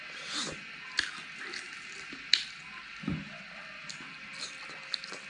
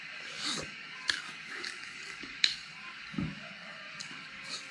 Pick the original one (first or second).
first